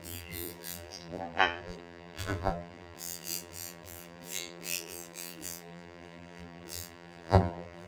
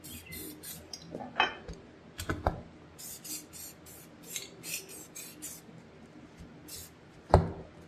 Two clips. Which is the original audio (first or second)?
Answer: second